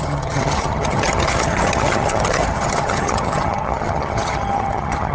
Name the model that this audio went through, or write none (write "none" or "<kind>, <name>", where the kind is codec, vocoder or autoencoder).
vocoder, HiFi-GAN